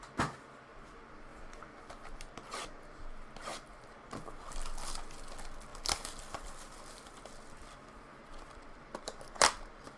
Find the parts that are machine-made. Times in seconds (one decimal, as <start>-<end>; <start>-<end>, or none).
1.3-1.8; 3.5-4.2; 5.7-7.1; 7.6-10.0